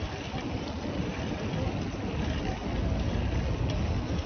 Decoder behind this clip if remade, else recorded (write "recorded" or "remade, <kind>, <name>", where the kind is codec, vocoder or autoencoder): recorded